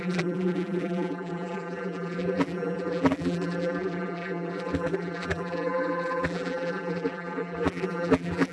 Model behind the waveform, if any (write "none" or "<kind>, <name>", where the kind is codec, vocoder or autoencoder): vocoder, BigVGAN v2